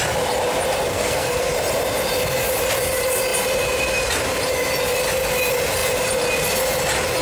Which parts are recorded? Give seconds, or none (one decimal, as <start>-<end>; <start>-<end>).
0.0-0.9; 1.5-7.2